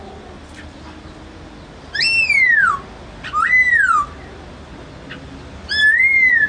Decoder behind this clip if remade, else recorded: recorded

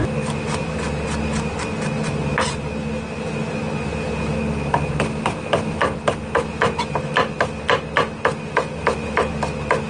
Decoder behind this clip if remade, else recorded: recorded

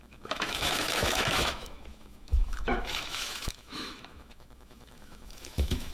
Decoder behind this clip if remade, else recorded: remade, autoencoder, DAC-VAE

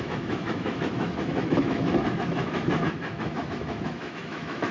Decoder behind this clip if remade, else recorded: remade, autoencoder, DAC-VAE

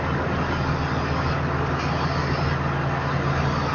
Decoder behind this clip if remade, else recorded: recorded